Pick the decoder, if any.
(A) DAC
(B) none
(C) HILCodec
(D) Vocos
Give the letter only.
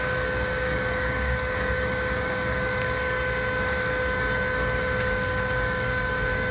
A